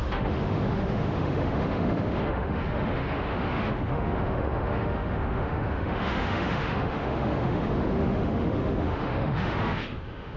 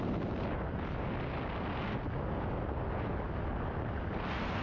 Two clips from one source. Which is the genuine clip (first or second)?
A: second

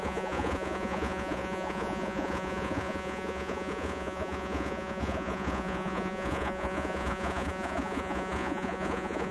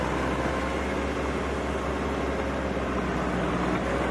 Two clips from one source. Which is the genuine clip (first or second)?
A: second